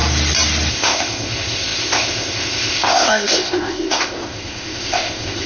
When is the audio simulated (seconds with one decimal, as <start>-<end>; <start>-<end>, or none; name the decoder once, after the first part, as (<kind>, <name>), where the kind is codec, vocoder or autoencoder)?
0.7-5.5 (codec, ZipCodec)